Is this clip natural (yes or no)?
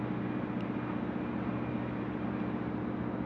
yes